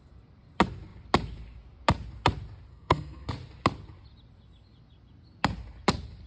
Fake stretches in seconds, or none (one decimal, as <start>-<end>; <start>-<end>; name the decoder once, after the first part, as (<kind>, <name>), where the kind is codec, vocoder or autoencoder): 2.7-3.3 (codec, SNAC)